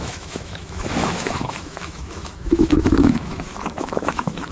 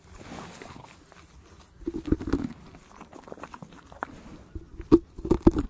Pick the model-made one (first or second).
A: first